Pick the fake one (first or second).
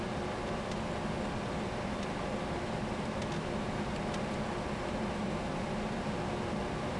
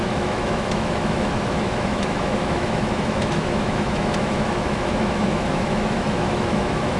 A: second